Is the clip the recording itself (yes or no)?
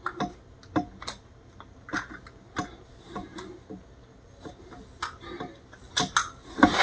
yes